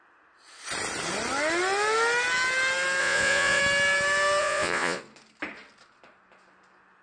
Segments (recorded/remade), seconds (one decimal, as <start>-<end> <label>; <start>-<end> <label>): 0.0-3.0 recorded; 3.0-3.6 remade; 3.6-4.4 recorded; 4.4-5.0 remade; 5.0-7.0 recorded